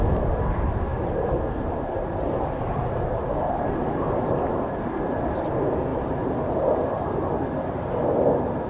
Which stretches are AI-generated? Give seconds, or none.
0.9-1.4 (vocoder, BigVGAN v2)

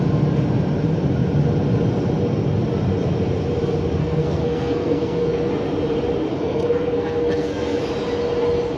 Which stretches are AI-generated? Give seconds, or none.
4.0-5.5 (codec, SNAC); 6.3-7.8

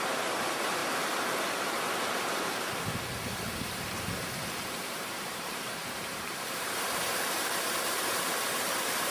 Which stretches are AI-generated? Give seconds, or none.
0.0-0.8 (vocoder, BigVGAN v2); 3.5-9.1